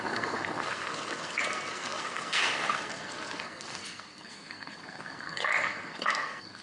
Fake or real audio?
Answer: fake